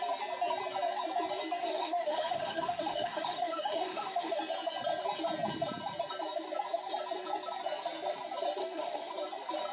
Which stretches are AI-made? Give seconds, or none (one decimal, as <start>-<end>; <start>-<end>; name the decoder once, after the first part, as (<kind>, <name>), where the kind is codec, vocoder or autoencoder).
1.6-4.4 (autoencoder, DAC-VAE); 8.6-9.1